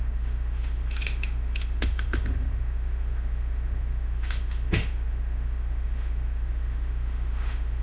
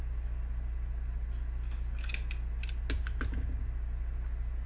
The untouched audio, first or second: second